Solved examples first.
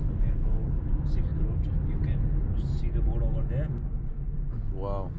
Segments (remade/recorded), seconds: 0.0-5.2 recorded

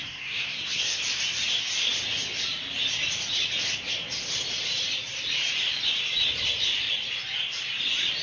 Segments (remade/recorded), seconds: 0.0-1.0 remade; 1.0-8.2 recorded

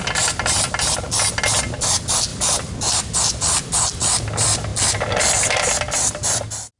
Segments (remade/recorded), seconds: 0.0-6.8 recorded

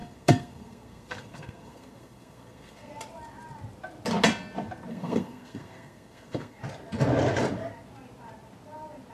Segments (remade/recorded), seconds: 0.0-2.9 remade; 2.9-4.9 recorded; 4.9-6.6 remade; 6.6-9.1 recorded

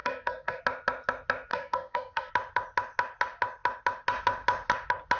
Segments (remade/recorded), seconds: 0.0-0.6 remade; 0.6-1.5 recorded; 1.5-2.3 remade; 2.3-5.2 recorded